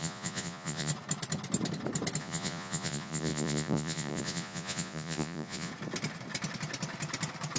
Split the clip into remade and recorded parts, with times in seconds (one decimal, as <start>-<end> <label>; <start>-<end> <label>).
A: 0.0-0.9 remade; 0.9-2.2 recorded; 2.2-5.7 remade; 5.7-7.6 recorded